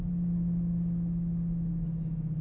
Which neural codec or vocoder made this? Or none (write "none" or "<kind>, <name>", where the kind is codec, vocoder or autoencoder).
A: none